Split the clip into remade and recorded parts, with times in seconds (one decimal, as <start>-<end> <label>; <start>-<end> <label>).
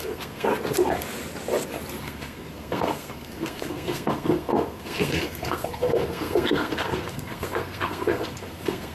0.0-0.5 remade; 0.5-2.0 recorded; 2.0-8.9 remade